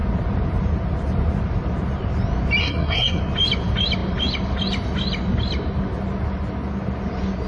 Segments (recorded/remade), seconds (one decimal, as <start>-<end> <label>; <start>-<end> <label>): 0.0-2.6 recorded; 2.6-3.2 remade; 3.2-7.5 recorded